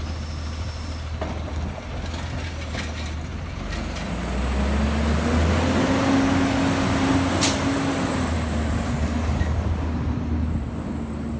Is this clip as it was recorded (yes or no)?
yes